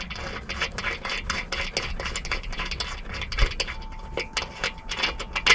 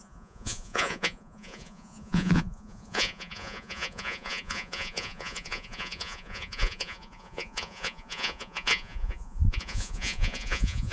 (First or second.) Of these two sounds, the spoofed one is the second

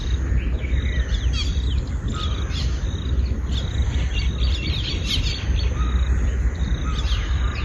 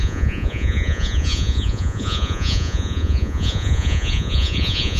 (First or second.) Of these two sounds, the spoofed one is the second